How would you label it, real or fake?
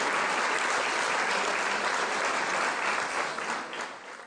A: real